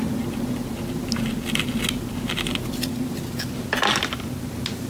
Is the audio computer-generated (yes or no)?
no